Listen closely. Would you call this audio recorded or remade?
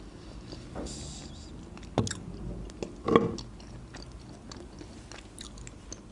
recorded